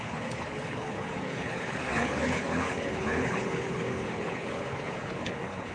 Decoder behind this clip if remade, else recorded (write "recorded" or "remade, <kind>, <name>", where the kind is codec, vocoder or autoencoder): remade, codec, HILCodec